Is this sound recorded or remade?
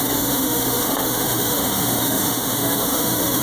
remade